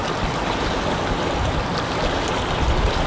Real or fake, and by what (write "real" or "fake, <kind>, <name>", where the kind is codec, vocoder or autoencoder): real